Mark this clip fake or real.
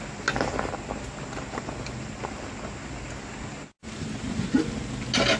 real